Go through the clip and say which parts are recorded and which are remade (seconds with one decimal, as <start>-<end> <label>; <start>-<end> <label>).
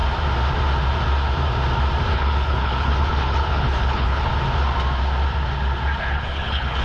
0.0-2.1 recorded; 2.1-4.3 remade; 4.3-6.0 recorded; 6.0-6.8 remade